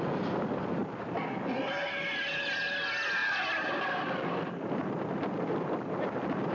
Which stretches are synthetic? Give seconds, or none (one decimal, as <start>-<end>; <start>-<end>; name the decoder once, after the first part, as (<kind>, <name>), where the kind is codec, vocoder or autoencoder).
0.8-1.9 (vocoder, BigVGAN v2); 3.2-4.5

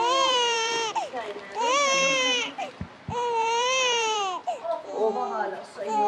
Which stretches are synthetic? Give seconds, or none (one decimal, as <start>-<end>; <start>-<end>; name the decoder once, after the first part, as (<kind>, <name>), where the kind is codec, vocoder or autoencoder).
0.0-4.4 (vocoder, BigVGAN v2); 5.5-6.1